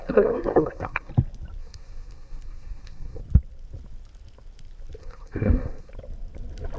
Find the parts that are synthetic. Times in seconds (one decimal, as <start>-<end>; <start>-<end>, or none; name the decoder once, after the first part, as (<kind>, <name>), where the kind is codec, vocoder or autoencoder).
0.0-1.1 (codec, SNAC); 1.6-3.2; 5.0-5.9